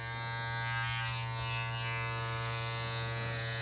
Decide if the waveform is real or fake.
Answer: real